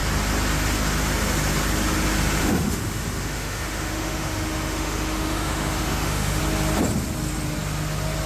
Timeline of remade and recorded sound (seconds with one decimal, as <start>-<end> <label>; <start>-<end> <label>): 0.0-2.4 recorded; 2.4-6.4 remade; 6.4-8.3 recorded

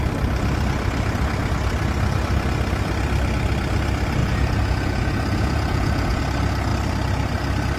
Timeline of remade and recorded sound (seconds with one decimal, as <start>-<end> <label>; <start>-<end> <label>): 0.0-4.2 recorded; 4.2-6.2 remade; 6.2-7.8 recorded

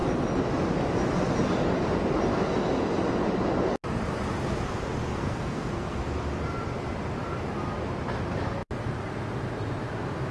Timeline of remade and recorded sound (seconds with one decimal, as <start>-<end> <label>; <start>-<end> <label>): 0.0-5.1 recorded; 5.1-6.0 remade; 6.0-10.3 recorded

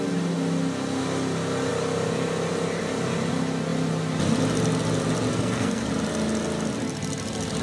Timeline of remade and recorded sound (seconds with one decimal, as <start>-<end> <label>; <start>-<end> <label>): 0.0-5.3 recorded; 5.3-5.9 remade; 5.9-7.6 recorded

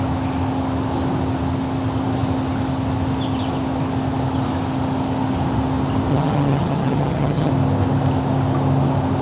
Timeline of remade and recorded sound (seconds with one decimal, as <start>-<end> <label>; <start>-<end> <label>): 0.0-6.1 recorded; 6.1-7.5 remade; 7.5-9.2 recorded